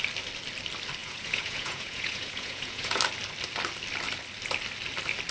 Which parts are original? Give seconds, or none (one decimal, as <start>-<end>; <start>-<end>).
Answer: 0.0-1.0; 3.0-5.3